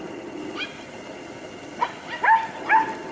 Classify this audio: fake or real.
real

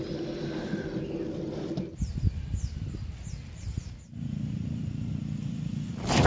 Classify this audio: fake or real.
real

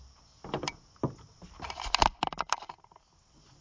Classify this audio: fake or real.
real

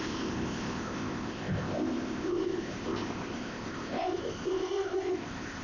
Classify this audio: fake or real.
fake